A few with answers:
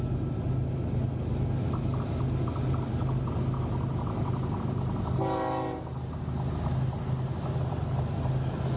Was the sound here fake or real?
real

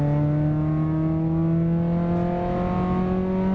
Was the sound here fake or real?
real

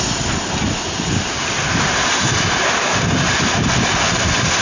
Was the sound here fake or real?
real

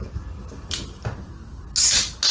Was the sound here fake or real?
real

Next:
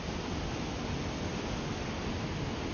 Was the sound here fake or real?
real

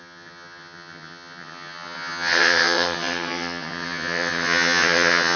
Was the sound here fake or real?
fake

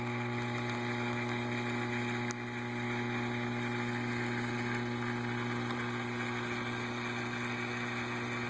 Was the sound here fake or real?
real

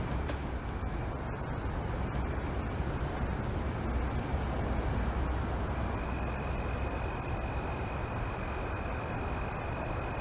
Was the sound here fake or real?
real